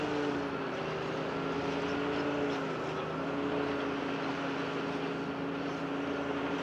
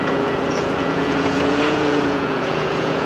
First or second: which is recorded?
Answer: first